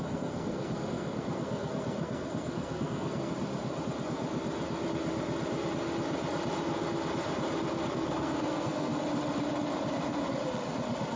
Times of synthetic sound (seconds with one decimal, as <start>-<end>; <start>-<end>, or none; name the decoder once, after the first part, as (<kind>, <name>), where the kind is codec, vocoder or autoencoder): 0.0-3.3 (codec, SNAC); 7.9-8.9